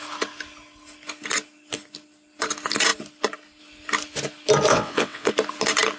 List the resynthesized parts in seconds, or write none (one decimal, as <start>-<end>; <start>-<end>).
4.7-5.3